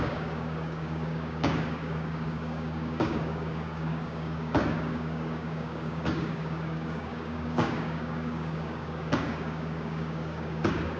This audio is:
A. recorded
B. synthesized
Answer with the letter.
B